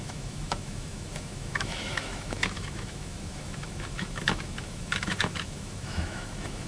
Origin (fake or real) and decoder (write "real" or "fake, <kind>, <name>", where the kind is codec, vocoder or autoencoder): fake, autoencoder, DAC-VAE